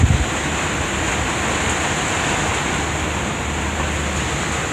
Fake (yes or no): no